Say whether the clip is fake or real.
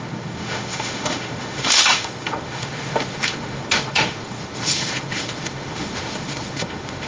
fake